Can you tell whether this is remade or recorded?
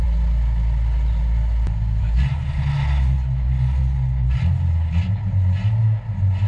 recorded